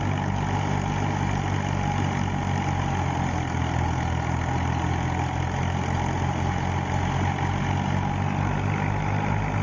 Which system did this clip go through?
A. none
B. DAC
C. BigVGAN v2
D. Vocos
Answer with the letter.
A